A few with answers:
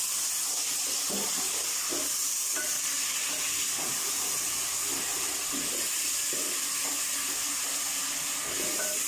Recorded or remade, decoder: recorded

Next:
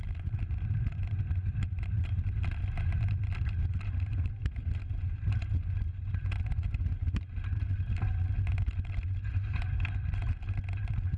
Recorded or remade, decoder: recorded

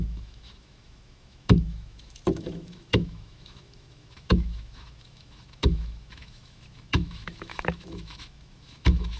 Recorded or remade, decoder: remade, autoencoder, DAC-VAE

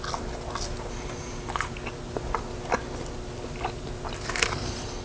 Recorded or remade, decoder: recorded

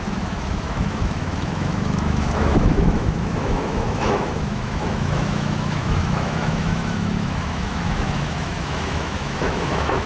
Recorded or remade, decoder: remade, autoencoder, DAC-VAE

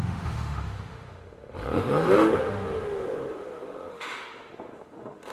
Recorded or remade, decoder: remade, autoencoder, DAC-VAE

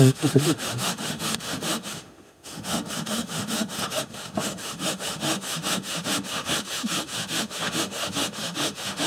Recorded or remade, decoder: remade, autoencoder, DAC-VAE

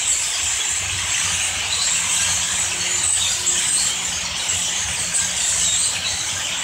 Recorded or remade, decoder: recorded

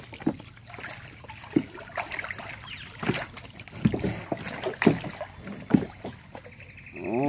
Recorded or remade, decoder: recorded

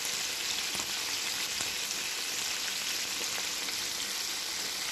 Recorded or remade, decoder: recorded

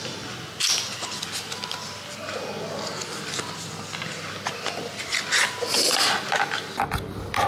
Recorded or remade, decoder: recorded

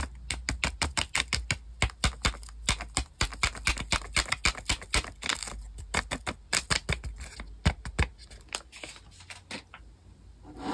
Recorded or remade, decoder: recorded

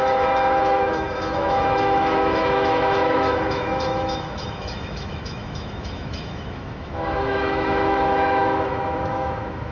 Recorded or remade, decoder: remade, autoencoder, DAC-VAE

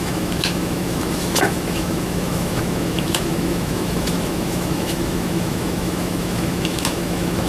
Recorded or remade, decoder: remade, autoencoder, DAC-VAE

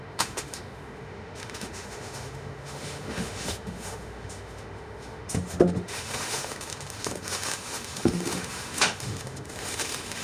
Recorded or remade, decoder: remade, autoencoder, DAC-VAE